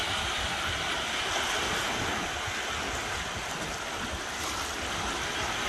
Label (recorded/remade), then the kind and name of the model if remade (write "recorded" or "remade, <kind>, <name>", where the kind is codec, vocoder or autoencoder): recorded